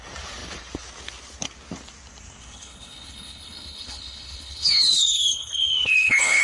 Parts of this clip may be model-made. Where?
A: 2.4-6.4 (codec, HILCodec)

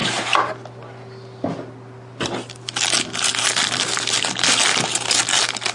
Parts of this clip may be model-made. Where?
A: none

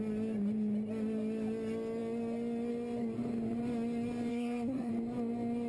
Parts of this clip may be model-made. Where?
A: 4.3-4.9 (codec, SNAC)

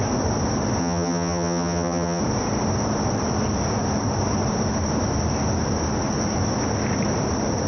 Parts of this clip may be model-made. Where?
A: 0.8-2.2 (vocoder, HiFi-GAN)

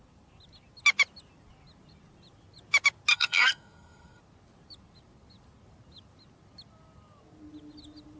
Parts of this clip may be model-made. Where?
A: 3.1-4.2 (codec, SNAC)

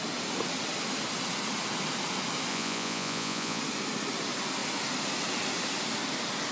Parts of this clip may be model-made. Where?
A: 2.5-3.6 (vocoder, Vocos)

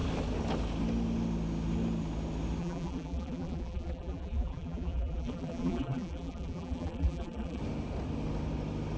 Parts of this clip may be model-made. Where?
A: 2.6-7.6 (vocoder, BigVGAN v2)